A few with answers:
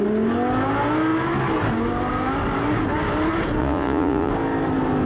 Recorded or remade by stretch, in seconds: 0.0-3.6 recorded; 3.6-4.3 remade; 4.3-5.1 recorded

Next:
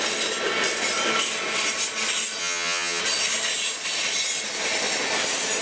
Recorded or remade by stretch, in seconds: 0.0-2.4 recorded; 2.4-3.0 remade; 3.0-5.6 recorded

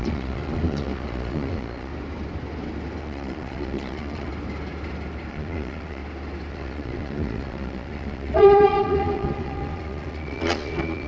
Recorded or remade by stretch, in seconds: 0.0-1.9 remade; 1.9-3.0 recorded; 3.0-4.3 remade; 4.3-5.3 recorded; 5.3-6.0 remade; 6.0-6.5 recorded; 6.5-11.1 remade

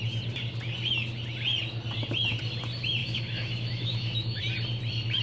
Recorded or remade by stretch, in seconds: 0.0-3.0 recorded; 3.0-4.4 remade; 4.4-5.2 recorded

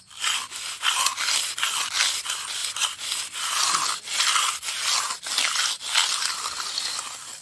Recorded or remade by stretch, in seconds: 0.0-7.4 recorded

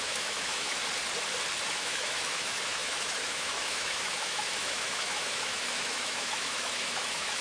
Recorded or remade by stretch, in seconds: 0.0-0.8 remade; 0.8-1.7 recorded; 1.7-7.4 remade

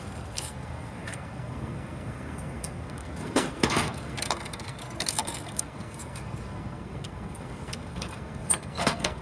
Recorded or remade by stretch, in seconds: 0.0-9.2 remade

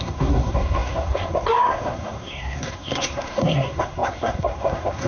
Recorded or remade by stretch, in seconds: 0.0-5.1 remade